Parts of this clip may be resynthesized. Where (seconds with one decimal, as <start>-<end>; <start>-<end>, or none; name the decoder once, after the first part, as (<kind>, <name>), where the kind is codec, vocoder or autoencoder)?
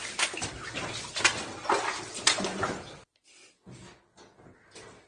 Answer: none